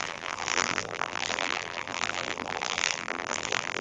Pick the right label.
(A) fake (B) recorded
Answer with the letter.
A